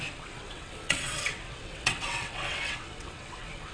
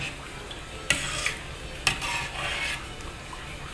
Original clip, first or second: second